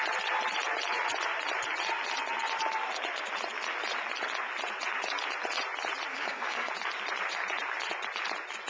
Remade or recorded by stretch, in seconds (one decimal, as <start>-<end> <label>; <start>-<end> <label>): 0.0-6.1 recorded; 6.1-6.7 remade; 6.7-8.7 recorded